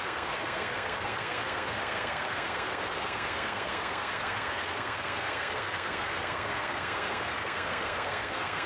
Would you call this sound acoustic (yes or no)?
no